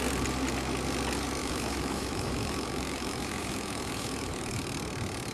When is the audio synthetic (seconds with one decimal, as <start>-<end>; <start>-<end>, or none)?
1.4-4.6